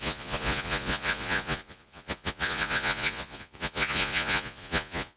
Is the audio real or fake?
fake